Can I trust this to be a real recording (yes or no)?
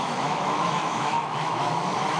no